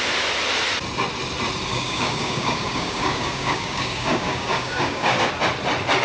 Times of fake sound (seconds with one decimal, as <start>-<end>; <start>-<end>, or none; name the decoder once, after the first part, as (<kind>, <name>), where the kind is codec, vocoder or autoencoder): 1.7-5.3 (codec, DAC)